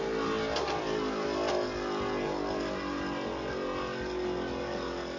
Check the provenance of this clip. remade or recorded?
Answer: recorded